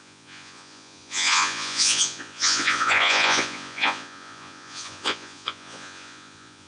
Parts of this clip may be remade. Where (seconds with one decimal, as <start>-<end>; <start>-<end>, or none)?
0.0-6.7